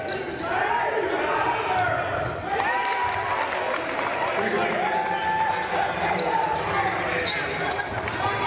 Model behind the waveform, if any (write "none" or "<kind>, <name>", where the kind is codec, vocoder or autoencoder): none